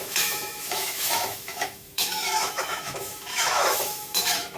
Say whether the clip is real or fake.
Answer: fake